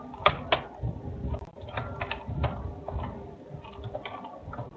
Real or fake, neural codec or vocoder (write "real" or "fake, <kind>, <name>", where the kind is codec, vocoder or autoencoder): real